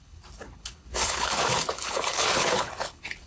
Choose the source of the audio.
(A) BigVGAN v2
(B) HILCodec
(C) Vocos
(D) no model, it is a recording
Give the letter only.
B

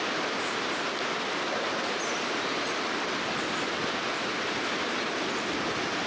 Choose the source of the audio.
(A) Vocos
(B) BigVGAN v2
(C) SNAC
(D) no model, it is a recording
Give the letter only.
D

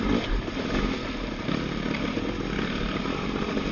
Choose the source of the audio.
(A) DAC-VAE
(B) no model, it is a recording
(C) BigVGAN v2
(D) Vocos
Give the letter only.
B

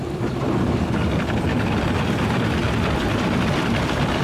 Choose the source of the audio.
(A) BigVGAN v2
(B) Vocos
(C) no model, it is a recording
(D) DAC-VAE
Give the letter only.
A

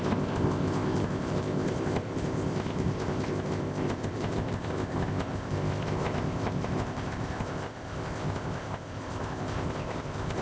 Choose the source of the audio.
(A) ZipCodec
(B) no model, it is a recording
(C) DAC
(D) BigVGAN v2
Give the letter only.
A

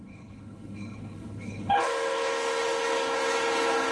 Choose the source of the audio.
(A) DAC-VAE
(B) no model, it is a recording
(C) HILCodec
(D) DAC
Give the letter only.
C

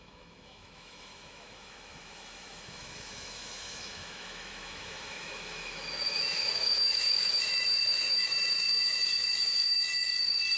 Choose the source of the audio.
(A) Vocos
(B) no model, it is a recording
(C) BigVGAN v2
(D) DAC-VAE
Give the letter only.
D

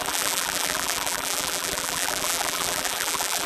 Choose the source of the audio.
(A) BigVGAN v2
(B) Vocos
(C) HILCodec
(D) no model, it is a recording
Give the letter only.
A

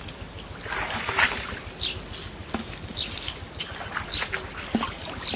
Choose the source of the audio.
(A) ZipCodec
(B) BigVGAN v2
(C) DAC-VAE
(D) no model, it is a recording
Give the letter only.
D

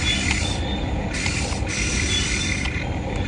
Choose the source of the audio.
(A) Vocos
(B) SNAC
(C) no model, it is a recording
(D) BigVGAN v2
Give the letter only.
D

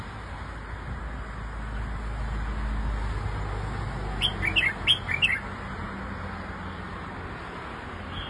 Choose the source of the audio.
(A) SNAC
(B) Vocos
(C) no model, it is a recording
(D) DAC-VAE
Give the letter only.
C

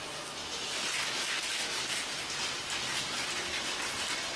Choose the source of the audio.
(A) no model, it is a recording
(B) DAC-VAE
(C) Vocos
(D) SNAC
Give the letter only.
A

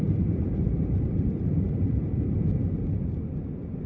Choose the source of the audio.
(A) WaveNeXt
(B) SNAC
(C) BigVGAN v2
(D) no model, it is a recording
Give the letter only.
C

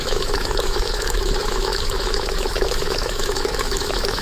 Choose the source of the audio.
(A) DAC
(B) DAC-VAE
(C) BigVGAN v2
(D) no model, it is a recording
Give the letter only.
B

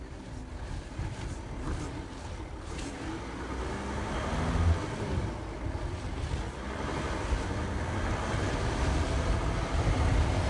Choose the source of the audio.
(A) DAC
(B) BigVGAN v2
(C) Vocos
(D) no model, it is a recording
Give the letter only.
D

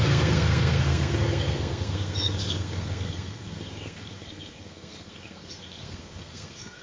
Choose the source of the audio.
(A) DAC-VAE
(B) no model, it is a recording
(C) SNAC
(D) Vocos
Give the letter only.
C